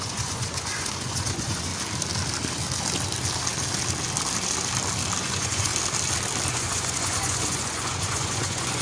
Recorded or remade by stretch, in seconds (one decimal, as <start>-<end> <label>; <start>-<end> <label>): 0.0-1.7 remade; 1.7-5.2 recorded; 5.2-5.7 remade; 5.7-6.5 recorded; 6.5-8.8 remade

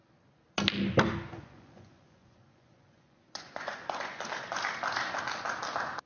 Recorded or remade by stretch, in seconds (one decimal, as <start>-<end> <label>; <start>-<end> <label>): 0.0-1.4 recorded; 1.4-4.2 remade; 4.2-6.1 recorded

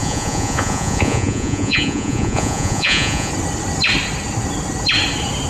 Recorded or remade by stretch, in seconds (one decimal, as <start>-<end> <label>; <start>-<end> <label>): 0.0-3.3 remade; 3.3-5.5 recorded

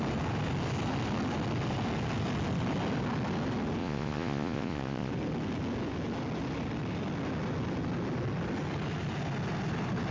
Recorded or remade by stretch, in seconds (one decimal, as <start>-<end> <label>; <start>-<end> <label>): 0.0-3.8 recorded; 3.8-5.1 remade; 5.1-10.1 recorded

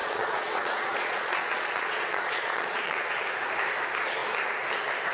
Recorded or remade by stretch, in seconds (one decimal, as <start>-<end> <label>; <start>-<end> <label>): 0.0-3.1 remade; 3.1-5.1 recorded